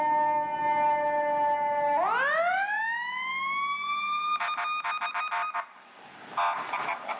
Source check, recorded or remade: recorded